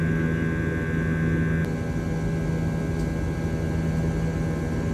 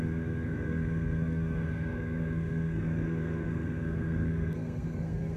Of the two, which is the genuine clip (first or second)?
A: first